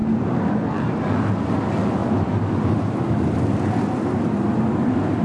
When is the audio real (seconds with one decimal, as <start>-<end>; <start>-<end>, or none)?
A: 0.0-2.0